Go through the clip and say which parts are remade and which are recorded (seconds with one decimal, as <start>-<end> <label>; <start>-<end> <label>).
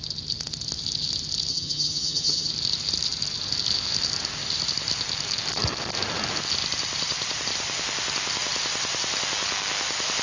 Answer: 0.0-1.5 recorded; 1.5-2.5 remade; 2.5-10.2 recorded